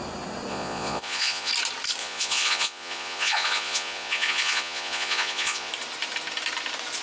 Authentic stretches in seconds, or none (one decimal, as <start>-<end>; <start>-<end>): 0.0-0.5; 1.5-2.0; 5.7-7.0